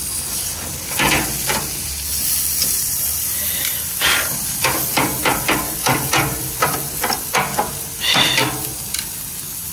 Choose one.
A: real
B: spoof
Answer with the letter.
A